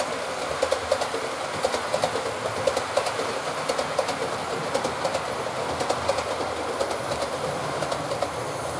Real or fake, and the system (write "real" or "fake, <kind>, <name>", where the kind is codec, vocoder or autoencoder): real